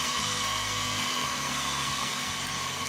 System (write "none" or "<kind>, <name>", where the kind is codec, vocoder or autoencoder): codec, SNAC